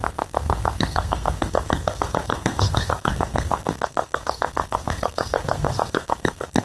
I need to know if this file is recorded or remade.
remade